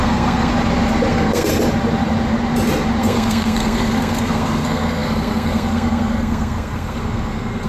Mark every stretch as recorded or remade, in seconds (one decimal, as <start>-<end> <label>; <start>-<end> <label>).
0.0-0.5 remade; 0.5-1.1 recorded; 1.1-1.5 remade; 1.5-3.0 recorded; 3.0-7.7 remade

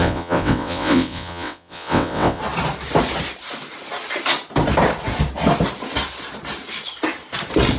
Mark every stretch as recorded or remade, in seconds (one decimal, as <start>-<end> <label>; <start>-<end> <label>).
0.0-2.4 remade; 2.4-7.8 recorded

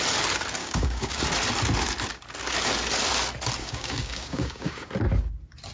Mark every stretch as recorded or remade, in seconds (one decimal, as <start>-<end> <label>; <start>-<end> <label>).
0.0-0.6 recorded; 0.6-1.2 remade; 1.2-3.6 recorded; 3.6-4.9 remade; 4.9-5.7 recorded

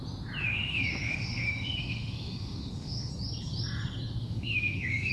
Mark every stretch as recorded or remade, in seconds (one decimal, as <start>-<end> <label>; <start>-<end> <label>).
0.0-0.4 recorded; 0.4-3.1 remade; 3.1-4.2 recorded; 4.2-5.1 remade

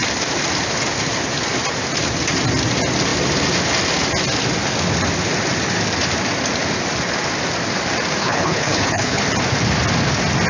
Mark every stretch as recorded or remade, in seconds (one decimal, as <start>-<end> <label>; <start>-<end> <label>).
0.0-8.2 recorded; 8.2-9.2 remade; 9.2-10.5 recorded

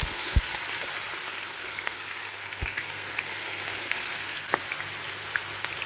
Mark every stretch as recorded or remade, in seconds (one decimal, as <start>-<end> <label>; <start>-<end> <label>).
0.0-0.5 remade; 0.5-1.3 recorded; 1.3-4.6 remade; 4.6-5.9 recorded

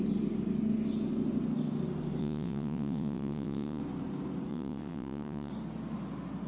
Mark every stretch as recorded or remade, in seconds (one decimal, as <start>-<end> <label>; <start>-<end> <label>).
0.0-2.2 recorded; 2.2-3.8 remade; 3.8-4.5 recorded; 4.5-5.5 remade; 5.5-6.5 recorded

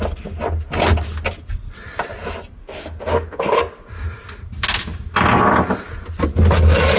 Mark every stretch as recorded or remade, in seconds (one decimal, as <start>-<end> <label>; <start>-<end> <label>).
0.0-2.6 recorded; 2.6-3.6 remade; 3.6-7.0 recorded